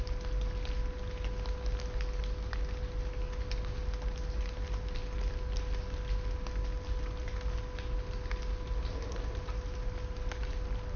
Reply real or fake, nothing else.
real